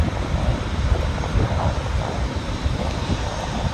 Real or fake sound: fake